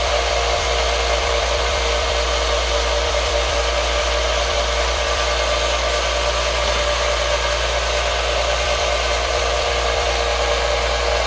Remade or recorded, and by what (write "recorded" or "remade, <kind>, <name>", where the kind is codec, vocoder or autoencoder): remade, vocoder, BigVGAN v2